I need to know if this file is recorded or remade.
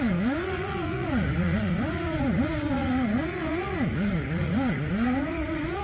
remade